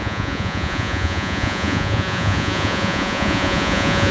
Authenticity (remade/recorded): remade